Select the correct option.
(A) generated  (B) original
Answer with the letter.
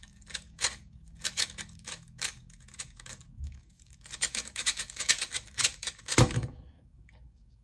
A